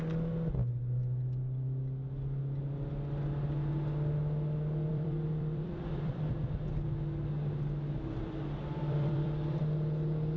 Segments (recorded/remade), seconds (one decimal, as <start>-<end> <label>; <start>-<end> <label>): 0.0-4.9 recorded; 4.9-6.3 remade; 6.3-8.2 recorded; 8.2-9.6 remade; 9.6-10.4 recorded